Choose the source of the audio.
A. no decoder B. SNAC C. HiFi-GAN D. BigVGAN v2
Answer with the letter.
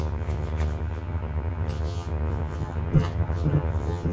C